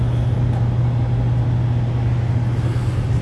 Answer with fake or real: real